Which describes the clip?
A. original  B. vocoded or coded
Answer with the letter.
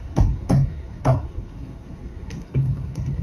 B